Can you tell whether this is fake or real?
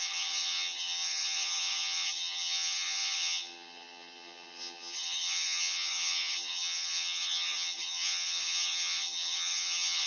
fake